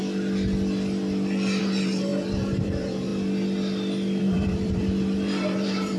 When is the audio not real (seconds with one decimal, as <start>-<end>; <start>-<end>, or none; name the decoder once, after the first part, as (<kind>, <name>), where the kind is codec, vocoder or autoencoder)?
1.6-3.1 (vocoder, BigVGAN v2); 4.2-6.0